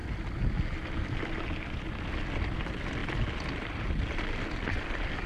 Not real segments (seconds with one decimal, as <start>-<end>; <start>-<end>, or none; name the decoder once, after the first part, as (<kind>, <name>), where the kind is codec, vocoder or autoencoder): none